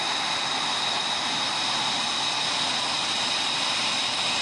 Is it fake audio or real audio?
real